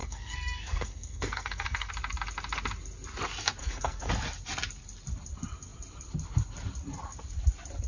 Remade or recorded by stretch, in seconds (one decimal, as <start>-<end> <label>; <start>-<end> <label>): 0.0-1.9 remade; 1.9-3.6 recorded; 3.6-4.1 remade; 4.1-7.9 recorded